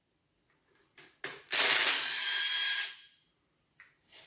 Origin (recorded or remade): recorded